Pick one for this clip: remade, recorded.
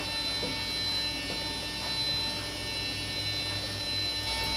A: recorded